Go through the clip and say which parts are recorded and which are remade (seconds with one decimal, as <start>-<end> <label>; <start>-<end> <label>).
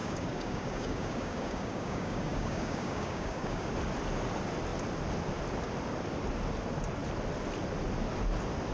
0.0-3.7 remade; 3.7-8.7 recorded